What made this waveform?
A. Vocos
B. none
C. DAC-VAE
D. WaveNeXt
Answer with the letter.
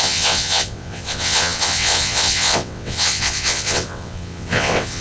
D